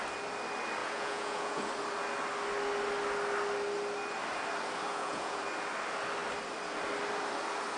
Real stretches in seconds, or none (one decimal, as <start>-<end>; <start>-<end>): 0.0-0.8; 1.7-4.9; 5.4-7.8